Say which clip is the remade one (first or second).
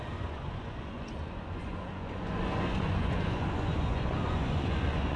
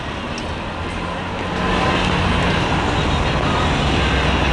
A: first